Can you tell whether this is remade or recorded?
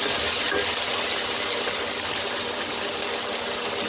recorded